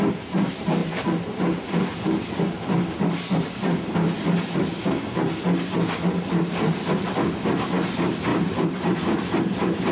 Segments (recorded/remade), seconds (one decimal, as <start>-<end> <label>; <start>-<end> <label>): 0.0-8.3 recorded; 8.3-9.0 remade; 9.0-9.9 recorded